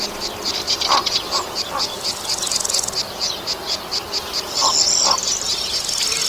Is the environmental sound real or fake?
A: real